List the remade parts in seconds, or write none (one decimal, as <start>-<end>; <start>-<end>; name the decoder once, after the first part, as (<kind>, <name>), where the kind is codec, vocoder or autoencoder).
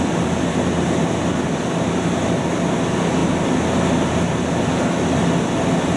none